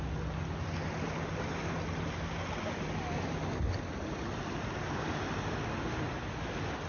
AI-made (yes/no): no